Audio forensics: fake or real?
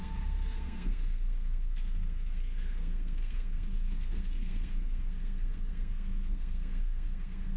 fake